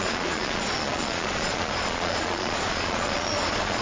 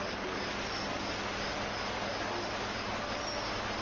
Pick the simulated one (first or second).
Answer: first